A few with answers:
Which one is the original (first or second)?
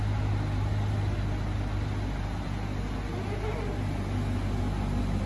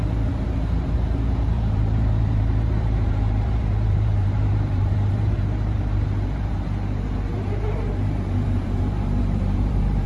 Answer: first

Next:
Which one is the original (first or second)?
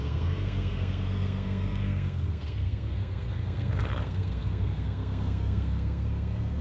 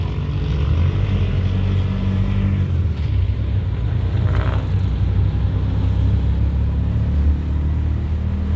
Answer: second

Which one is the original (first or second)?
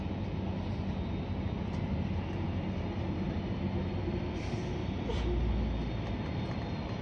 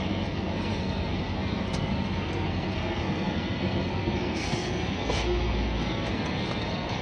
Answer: first